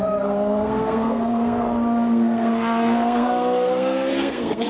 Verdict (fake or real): fake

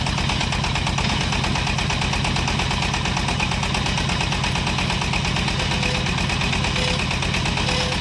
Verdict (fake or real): real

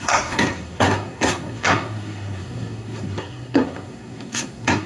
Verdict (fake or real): fake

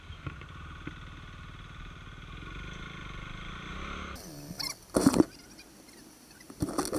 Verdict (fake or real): real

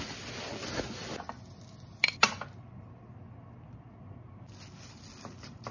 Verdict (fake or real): real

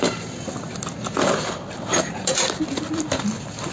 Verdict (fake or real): real